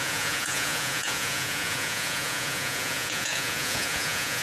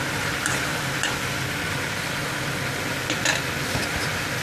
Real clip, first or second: second